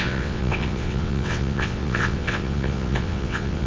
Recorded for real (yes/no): no